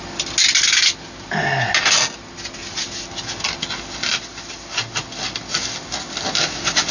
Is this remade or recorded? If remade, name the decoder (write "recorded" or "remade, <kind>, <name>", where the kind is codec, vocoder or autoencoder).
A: recorded